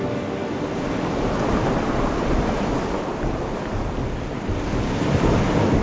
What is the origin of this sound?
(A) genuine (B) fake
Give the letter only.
A